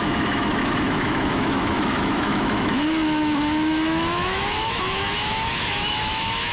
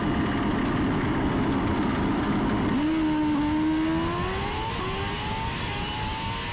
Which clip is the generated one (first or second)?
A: first